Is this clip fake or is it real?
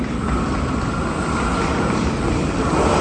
real